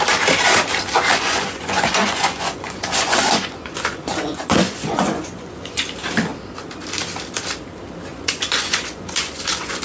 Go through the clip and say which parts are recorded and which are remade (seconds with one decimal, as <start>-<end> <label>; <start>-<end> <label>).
0.0-1.1 recorded; 1.1-5.8 remade; 5.8-8.1 recorded; 8.1-9.8 remade